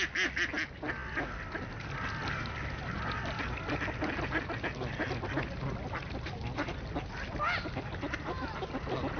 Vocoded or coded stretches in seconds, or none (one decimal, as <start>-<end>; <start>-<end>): none